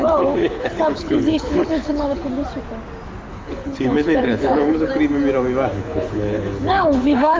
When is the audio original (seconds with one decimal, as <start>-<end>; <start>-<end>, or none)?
2.3-3.3; 4.9-5.7